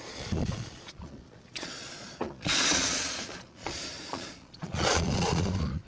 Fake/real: fake